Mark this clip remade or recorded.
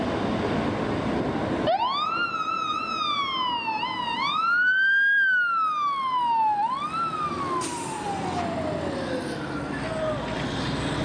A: recorded